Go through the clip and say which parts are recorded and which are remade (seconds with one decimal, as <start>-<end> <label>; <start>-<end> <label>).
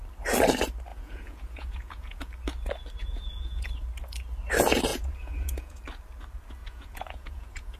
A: 0.0-0.9 recorded; 0.9-2.3 remade; 2.3-3.0 recorded; 3.0-3.7 remade; 3.7-4.9 recorded; 4.9-5.8 remade; 5.8-6.6 recorded; 6.6-7.8 remade